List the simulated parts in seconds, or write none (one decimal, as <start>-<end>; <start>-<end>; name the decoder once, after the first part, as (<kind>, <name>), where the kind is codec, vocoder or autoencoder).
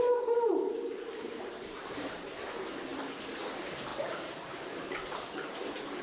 0.0-2.9 (vocoder, BigVGAN v2); 3.5-6.0